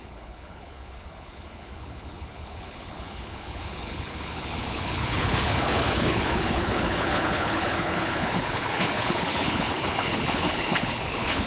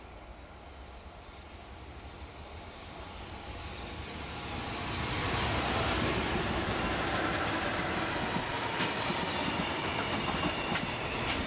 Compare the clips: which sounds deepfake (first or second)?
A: first